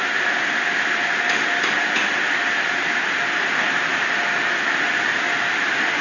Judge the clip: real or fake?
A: real